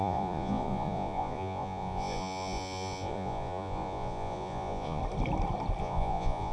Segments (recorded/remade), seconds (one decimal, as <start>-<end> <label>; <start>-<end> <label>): 0.0-5.0 remade; 5.0-5.8 recorded; 5.8-6.5 remade